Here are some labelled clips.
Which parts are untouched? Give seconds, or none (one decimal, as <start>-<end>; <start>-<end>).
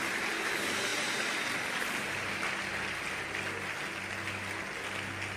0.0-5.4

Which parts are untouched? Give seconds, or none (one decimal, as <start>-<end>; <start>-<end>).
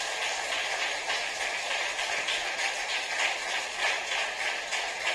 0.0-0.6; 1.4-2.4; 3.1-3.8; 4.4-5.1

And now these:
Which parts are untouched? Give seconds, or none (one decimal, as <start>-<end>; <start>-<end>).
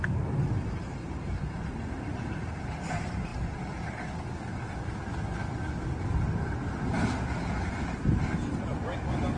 0.0-1.0; 2.6-9.4